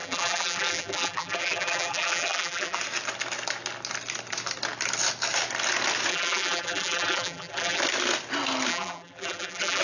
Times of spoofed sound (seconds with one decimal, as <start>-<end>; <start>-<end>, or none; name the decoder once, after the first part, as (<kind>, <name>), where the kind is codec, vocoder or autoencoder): 0.0-2.8 (vocoder, BigVGAN v2); 6.1-7.8; 8.7-9.8